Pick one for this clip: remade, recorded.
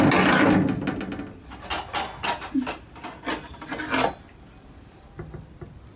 recorded